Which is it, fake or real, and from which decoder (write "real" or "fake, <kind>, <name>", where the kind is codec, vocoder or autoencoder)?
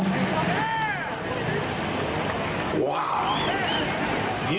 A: real